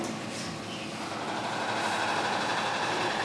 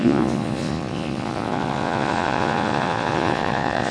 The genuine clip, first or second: first